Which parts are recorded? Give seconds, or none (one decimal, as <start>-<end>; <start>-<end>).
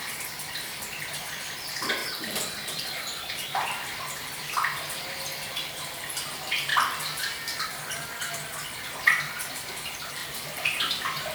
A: 0.0-10.2; 10.9-11.3